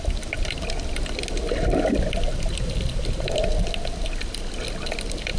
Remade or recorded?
recorded